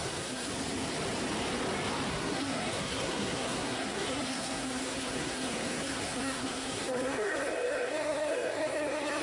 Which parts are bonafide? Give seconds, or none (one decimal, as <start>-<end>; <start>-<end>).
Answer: 0.5-2.1